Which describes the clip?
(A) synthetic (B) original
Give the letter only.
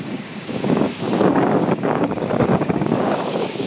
A